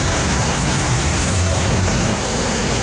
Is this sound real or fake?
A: fake